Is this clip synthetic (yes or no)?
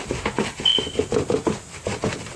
no